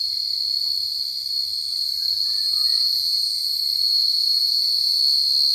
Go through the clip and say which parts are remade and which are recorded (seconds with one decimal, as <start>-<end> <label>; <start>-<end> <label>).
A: 0.0-1.7 recorded; 1.7-5.0 remade; 5.0-5.5 recorded